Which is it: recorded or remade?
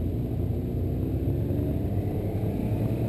recorded